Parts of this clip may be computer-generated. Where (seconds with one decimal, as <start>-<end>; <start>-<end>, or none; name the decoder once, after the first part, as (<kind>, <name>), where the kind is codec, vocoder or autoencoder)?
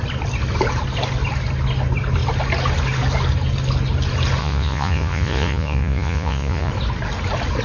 4.4-6.7 (vocoder, Vocos)